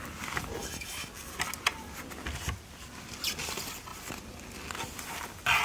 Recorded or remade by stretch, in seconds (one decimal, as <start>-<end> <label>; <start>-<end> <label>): 0.0-0.6 recorded; 0.6-1.1 remade; 1.1-5.6 recorded